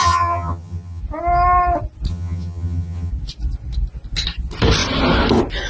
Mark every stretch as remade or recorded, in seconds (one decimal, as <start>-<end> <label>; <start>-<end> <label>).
0.0-1.0 remade; 1.0-2.1 recorded; 2.1-3.1 remade; 3.1-5.7 recorded